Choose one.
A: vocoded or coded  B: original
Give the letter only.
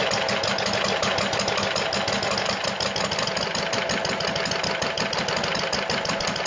B